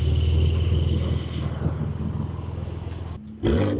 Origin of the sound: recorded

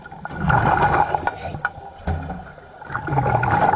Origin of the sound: recorded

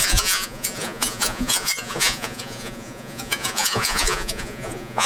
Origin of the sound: remade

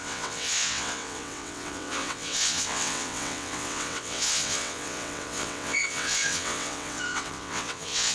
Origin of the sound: remade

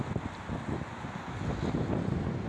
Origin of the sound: recorded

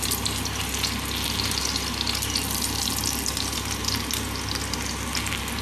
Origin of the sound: recorded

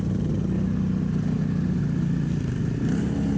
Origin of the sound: recorded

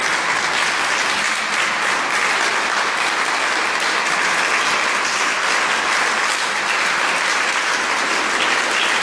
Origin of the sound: recorded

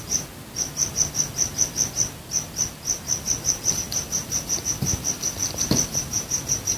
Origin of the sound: recorded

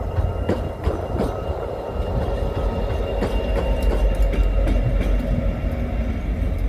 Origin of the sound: recorded